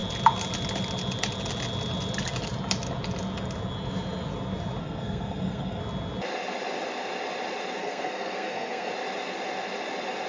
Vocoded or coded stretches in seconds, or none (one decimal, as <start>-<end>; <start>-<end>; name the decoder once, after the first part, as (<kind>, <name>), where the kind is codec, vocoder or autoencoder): 4.8-5.8 (codec, SNAC); 7.8-8.9